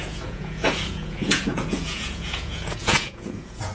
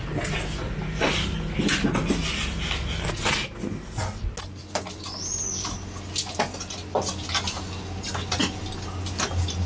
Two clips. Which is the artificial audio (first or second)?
first